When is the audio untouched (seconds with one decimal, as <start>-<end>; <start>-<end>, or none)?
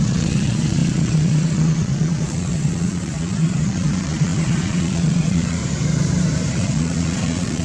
5.6-6.5